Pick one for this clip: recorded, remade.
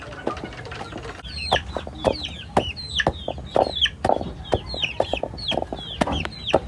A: recorded